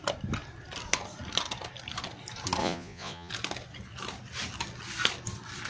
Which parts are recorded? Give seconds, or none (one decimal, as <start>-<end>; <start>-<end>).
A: 0.0-2.6; 3.3-5.7